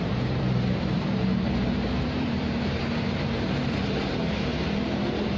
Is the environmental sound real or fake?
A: fake